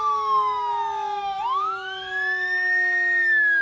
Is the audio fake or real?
fake